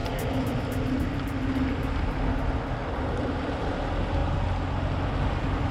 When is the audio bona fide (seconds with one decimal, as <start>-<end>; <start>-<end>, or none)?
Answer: 0.0-2.8; 3.8-5.7